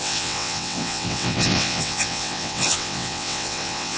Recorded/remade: remade